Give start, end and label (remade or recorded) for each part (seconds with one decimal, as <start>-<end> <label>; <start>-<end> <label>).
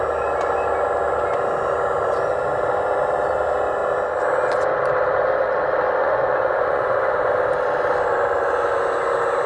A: 0.0-6.0 recorded; 6.0-7.3 remade; 7.3-9.5 recorded